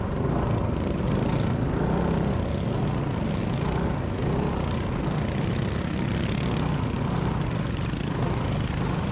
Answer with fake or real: real